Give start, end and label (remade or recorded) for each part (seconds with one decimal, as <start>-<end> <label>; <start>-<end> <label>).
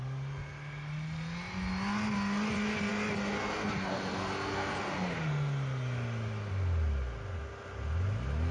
0.0-8.5 recorded